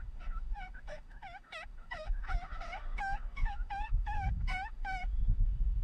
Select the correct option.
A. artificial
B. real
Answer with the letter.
A